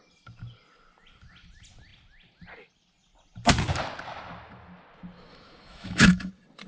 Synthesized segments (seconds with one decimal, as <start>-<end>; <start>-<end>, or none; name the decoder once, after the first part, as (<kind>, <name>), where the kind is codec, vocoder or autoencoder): 5.3-6.3 (autoencoder, DAC-VAE)